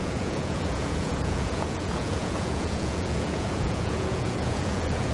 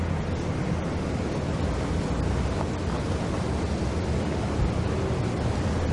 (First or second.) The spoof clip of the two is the first